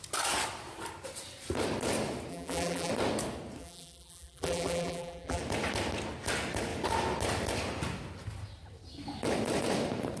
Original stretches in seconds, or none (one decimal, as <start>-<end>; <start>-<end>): 0.0-2.3; 2.9-3.6; 5.4-10.2